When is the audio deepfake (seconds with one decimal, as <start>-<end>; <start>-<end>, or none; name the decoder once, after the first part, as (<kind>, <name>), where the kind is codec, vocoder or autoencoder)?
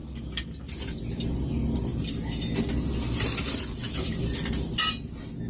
none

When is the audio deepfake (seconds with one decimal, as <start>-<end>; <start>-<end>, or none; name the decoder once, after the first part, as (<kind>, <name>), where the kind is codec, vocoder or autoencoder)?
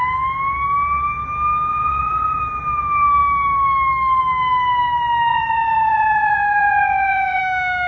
1.7-2.4 (vocoder, Vocos); 5.3-7.4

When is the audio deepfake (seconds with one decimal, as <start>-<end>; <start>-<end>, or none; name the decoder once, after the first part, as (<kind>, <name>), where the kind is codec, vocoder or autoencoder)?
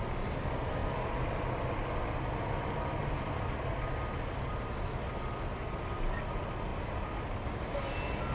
none